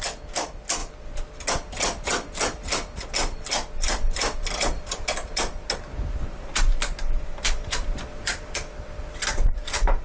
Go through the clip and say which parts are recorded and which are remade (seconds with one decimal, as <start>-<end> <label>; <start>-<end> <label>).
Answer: 0.0-10.0 recorded